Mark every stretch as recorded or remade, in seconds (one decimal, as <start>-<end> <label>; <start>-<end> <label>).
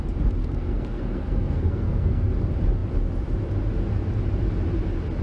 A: 0.0-0.4 recorded; 0.4-2.3 remade; 2.3-5.2 recorded